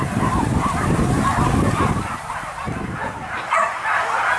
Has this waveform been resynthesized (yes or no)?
no